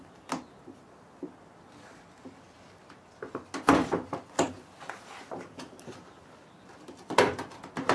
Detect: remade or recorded recorded